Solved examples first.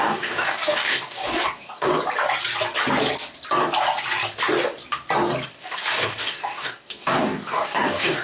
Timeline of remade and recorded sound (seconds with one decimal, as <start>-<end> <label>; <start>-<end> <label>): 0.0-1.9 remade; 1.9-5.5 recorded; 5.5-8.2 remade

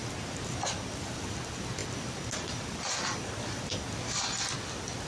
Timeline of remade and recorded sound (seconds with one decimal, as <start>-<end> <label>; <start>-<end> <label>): 0.0-5.1 recorded

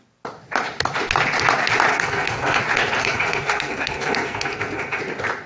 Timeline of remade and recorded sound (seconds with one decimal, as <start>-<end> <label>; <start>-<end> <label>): 0.0-1.9 recorded; 1.9-2.6 remade; 2.6-3.0 recorded; 3.0-5.0 remade; 5.0-5.5 recorded

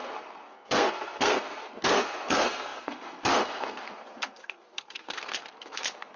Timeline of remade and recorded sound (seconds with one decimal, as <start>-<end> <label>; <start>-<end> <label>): 0.0-6.2 remade

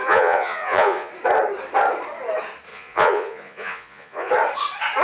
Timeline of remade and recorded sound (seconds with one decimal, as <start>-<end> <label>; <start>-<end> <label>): 0.0-1.1 remade; 1.1-2.7 recorded; 2.7-4.3 remade; 4.3-5.0 recorded

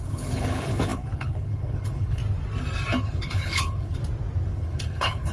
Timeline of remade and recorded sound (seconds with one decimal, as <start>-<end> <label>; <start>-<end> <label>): 0.0-2.2 remade; 2.2-3.0 recorded; 3.0-4.0 remade; 4.0-4.5 recorded; 4.5-5.3 remade

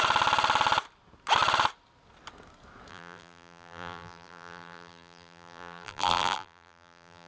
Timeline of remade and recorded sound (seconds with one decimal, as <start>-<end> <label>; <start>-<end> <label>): 0.0-2.9 recorded; 2.9-7.3 remade